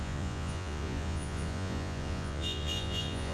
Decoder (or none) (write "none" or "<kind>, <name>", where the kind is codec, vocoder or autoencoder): vocoder, Vocos